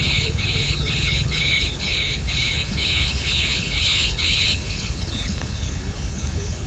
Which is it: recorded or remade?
remade